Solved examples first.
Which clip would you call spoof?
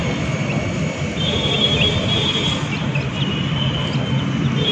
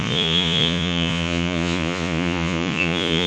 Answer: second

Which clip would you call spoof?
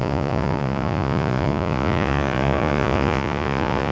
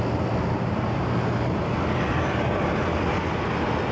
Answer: first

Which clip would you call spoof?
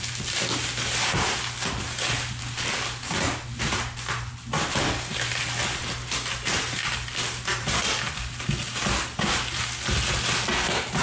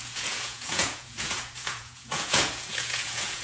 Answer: second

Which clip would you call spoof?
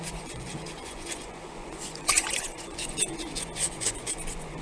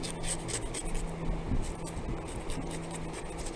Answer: first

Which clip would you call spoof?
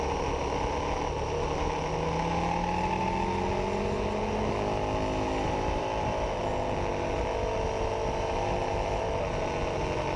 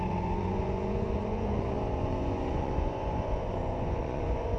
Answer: second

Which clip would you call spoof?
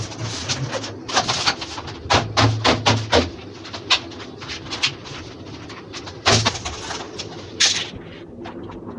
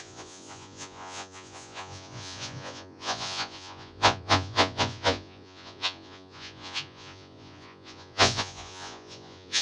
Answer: second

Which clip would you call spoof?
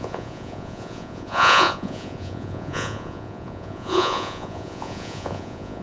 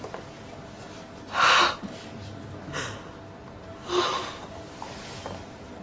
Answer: first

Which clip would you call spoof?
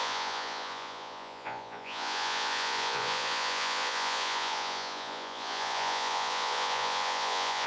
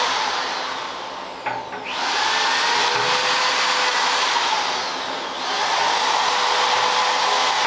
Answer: first